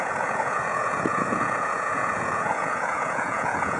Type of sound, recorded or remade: remade